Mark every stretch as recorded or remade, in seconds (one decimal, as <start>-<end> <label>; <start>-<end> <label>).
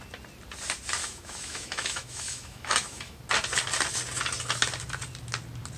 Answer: 0.0-1.0 recorded; 1.0-3.2 remade; 3.2-5.8 recorded